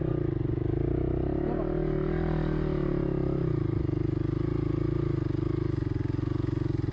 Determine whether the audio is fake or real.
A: real